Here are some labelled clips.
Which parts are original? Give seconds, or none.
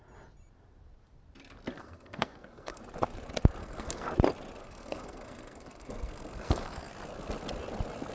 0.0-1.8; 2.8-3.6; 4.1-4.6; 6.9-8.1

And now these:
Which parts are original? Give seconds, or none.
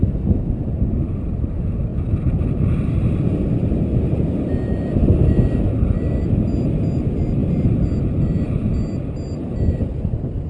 0.0-10.5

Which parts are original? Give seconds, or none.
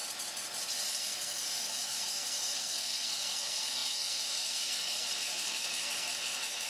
0.0-0.9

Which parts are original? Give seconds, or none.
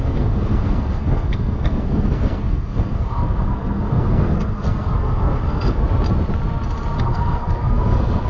5.8-7.0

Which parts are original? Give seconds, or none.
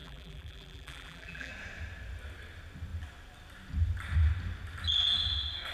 1.5-5.7